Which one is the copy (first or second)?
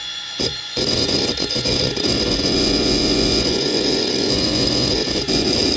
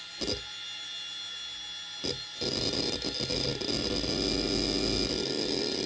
first